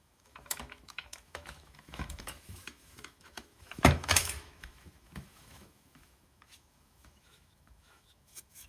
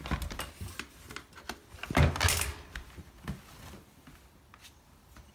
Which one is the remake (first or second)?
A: first